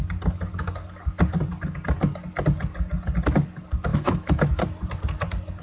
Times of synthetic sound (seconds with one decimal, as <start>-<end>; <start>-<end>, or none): 3.9-4.6